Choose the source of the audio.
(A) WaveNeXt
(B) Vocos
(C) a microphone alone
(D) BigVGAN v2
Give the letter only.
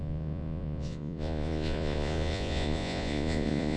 B